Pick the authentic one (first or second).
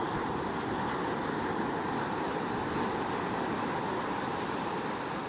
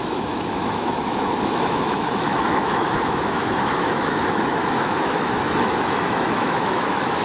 first